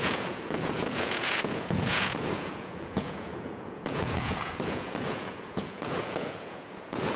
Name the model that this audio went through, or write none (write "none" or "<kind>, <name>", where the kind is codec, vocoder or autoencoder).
vocoder, Vocos